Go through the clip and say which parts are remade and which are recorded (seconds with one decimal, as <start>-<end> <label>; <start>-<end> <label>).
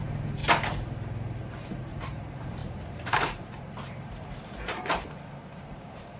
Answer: 0.0-0.4 remade; 0.4-1.7 recorded; 1.7-6.2 remade